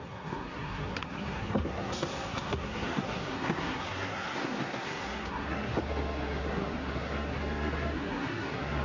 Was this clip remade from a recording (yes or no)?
yes